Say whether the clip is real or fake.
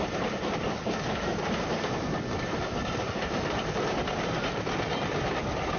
real